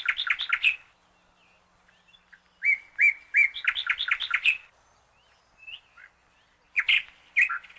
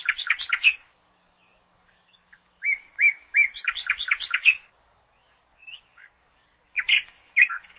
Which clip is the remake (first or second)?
second